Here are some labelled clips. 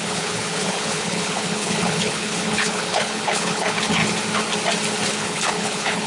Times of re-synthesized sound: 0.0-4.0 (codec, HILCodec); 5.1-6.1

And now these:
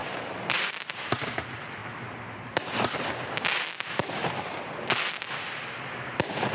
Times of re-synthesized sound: 0.0-1.0 (vocoder, BigVGAN v2); 1.8-3.1